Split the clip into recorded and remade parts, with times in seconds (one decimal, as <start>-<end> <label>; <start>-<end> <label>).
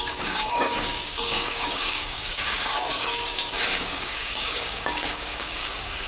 0.0-6.1 remade